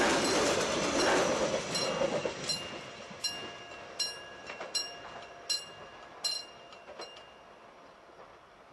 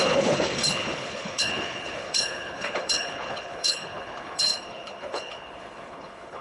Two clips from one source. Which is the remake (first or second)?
second